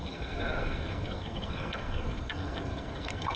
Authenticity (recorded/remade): remade